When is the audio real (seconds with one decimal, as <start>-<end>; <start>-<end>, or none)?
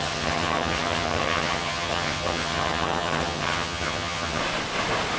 4.4-5.2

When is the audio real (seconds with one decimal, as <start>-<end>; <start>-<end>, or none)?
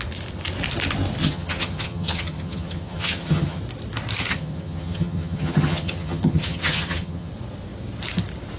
0.0-1.2; 3.6-4.3; 7.3-8.6